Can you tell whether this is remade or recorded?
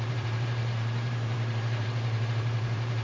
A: remade